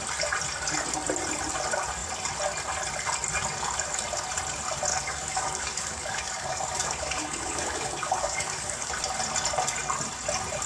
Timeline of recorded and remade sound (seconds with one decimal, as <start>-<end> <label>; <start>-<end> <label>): 0.0-4.9 recorded; 4.9-8.9 remade; 8.9-10.7 recorded